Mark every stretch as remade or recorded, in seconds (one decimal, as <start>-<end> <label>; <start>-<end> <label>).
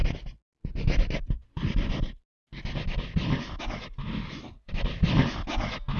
0.0-6.0 recorded